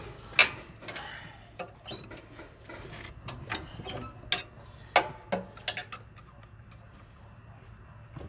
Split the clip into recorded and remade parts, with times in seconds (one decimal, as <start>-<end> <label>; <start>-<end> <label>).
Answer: 0.0-8.3 recorded